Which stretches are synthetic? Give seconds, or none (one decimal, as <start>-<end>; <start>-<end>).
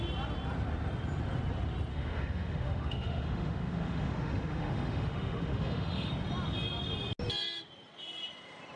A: 1.9-6.1